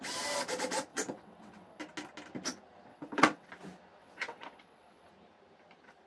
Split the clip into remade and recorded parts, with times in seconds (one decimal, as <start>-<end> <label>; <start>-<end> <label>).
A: 0.0-0.9 recorded; 0.9-1.8 remade; 1.8-2.9 recorded; 2.9-3.5 remade; 3.5-4.0 recorded; 4.0-5.1 remade; 5.1-6.1 recorded